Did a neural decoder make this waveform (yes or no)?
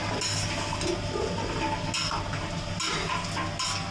no